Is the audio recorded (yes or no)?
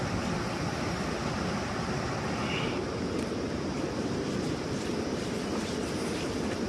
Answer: yes